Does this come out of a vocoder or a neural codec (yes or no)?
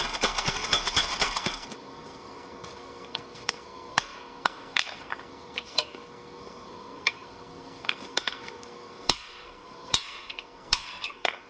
yes